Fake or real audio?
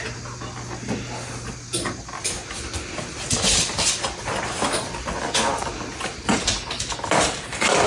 real